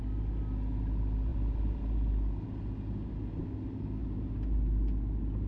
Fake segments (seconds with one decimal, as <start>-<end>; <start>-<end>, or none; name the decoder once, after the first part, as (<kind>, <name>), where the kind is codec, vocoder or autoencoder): 1.3-1.8 (vocoder, BigVGAN v2)